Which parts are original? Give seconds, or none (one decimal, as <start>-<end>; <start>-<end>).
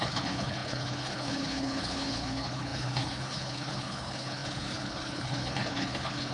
none